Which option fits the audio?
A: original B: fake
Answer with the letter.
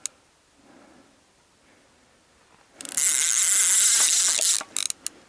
A